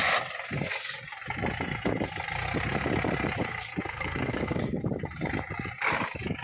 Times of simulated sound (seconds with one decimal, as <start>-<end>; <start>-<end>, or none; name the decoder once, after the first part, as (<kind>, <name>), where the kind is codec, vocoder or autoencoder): 3.8-4.8 (codec, DAC)